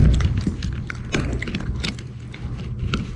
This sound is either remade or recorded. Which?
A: recorded